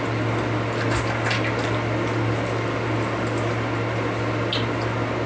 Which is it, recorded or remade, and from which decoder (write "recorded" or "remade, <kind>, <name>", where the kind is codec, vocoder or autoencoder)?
recorded